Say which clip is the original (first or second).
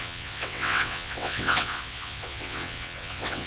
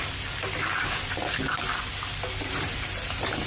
second